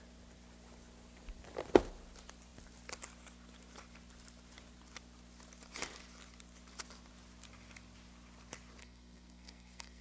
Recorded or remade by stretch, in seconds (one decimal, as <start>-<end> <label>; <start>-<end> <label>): 0.0-8.8 recorded; 8.8-10.0 remade